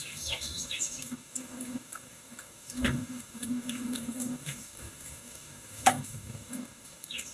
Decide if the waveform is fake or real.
fake